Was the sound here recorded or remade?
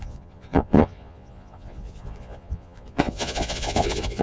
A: remade